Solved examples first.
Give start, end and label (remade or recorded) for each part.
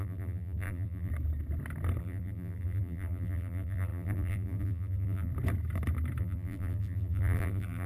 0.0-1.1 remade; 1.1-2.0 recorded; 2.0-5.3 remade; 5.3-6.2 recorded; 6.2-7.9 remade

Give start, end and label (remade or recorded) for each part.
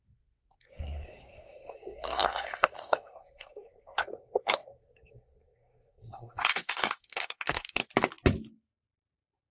0.0-7.8 remade; 7.8-9.5 recorded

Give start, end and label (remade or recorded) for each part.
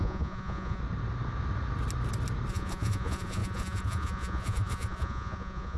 0.0-0.8 remade; 0.8-2.5 recorded; 2.5-5.8 remade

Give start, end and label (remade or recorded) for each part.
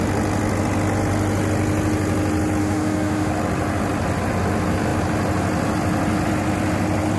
0.0-2.6 recorded; 2.6-3.3 remade; 3.3-7.2 recorded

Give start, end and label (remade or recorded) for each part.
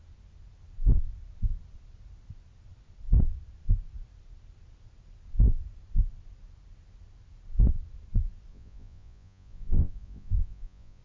0.0-8.5 recorded; 8.5-11.0 remade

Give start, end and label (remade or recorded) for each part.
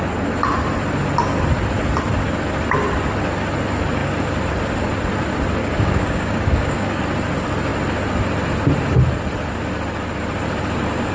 0.0-5.6 recorded; 5.6-7.0 remade; 7.0-11.1 recorded